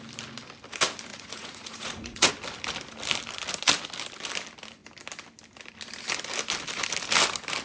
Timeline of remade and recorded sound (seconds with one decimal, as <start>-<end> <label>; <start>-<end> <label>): 0.0-1.1 recorded; 1.1-2.3 remade; 2.3-7.6 recorded